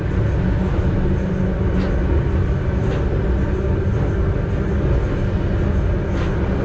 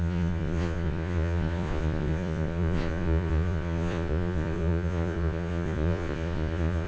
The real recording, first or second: first